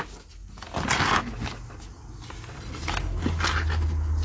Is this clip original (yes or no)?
yes